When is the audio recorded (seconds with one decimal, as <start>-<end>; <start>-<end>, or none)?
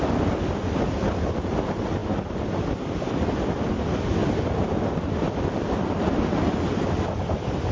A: 4.2-6.4